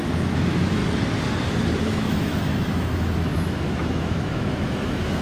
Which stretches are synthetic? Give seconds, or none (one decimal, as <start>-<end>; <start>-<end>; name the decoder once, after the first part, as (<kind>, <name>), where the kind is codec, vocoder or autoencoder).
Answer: 0.0-0.8 (autoencoder, DAC-VAE); 1.8-5.2